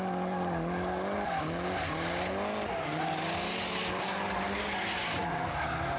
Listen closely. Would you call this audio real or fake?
real